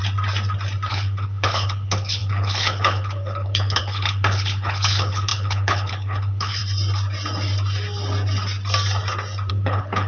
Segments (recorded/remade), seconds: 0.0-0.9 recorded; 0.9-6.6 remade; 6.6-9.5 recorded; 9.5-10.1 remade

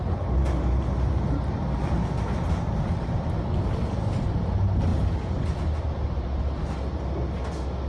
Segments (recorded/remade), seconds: 0.0-7.9 recorded

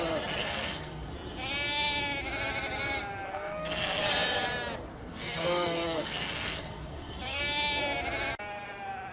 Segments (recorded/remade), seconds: 0.0-0.4 recorded; 0.4-1.1 remade; 1.1-3.3 recorded; 3.3-4.0 remade; 4.0-4.9 recorded; 4.9-7.4 remade; 7.4-9.1 recorded

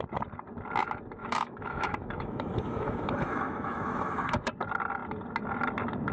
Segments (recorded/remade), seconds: 0.0-1.2 recorded; 1.2-4.5 remade; 4.5-6.1 recorded

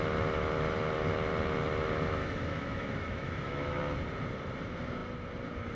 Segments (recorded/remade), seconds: 0.0-2.2 recorded; 2.2-3.8 remade; 3.8-5.8 recorded

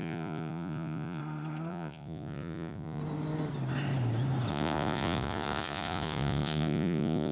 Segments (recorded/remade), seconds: 0.0-1.2 remade; 1.2-1.7 recorded; 1.7-3.0 remade; 3.0-4.5 recorded; 4.5-7.3 remade

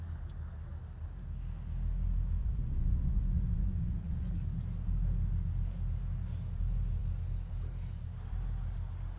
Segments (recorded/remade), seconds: 0.0-2.4 recorded; 2.4-4.3 remade; 4.3-9.2 recorded